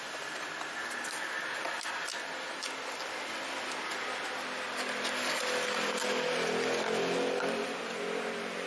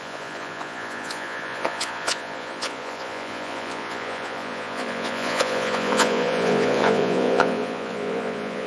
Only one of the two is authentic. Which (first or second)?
first